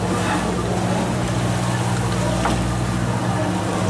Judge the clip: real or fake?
real